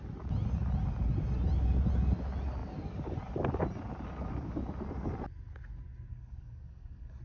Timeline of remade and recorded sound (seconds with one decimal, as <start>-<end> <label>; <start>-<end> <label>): 0.0-6.1 recorded; 6.1-7.2 remade